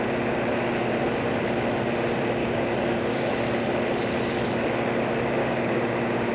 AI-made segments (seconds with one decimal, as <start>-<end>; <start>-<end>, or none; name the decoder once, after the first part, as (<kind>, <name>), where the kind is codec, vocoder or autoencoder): 2.4-3.4 (codec, DAC); 5.4-6.3